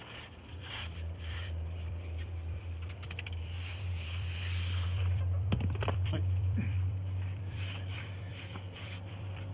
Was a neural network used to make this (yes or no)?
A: yes